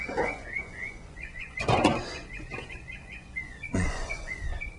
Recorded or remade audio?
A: remade